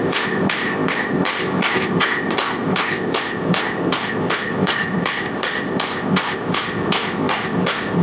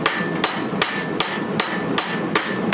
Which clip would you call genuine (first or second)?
second